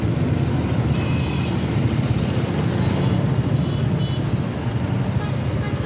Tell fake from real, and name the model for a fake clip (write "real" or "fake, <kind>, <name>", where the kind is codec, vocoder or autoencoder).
real